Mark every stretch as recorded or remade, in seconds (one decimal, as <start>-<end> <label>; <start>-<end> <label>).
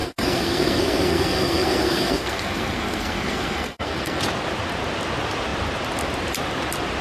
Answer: 0.0-4.2 remade; 4.2-7.0 recorded